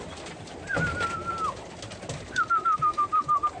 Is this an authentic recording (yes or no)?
yes